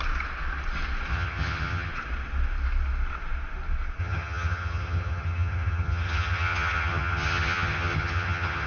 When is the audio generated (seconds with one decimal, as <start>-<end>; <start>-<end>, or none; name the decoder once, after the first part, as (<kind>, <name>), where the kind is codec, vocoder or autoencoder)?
1.1-1.9 (vocoder, HiFi-GAN); 4.0-8.7